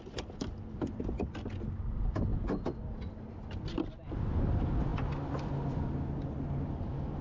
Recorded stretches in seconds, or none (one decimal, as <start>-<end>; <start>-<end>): 0.0-7.2